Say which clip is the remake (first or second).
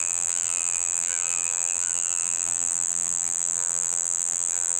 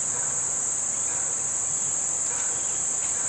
first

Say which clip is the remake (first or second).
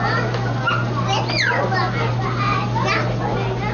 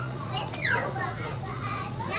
second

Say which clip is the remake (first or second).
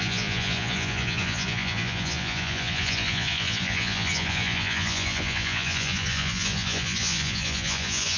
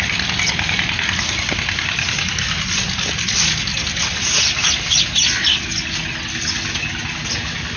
first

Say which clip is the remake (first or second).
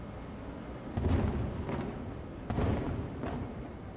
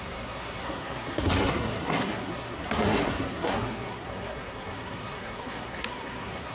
second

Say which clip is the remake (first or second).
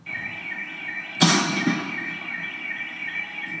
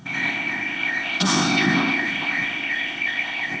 second